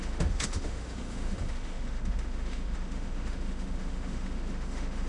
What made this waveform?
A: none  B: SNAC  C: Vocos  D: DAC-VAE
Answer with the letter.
D